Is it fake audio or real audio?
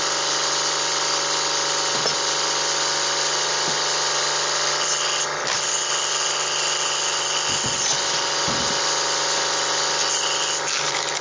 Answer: real